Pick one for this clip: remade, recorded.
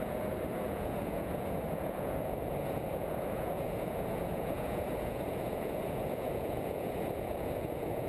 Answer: remade